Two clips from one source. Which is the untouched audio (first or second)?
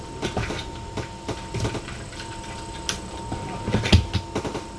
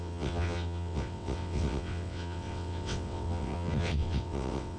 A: first